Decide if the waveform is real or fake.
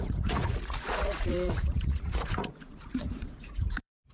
fake